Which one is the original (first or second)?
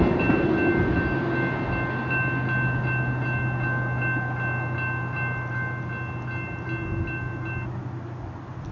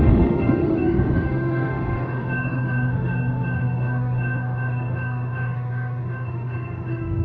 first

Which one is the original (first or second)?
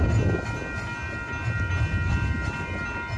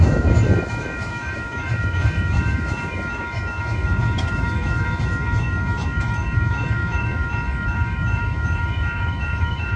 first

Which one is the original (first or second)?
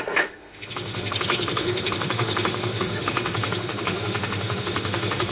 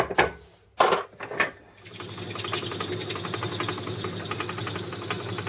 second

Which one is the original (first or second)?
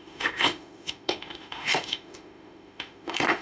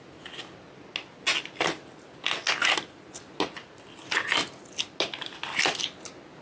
second